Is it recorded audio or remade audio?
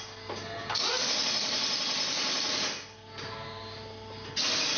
recorded